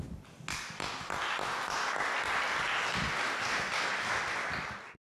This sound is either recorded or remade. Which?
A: recorded